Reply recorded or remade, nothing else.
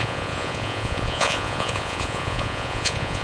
remade